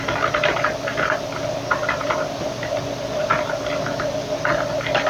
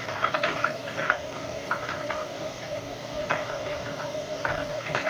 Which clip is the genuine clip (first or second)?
first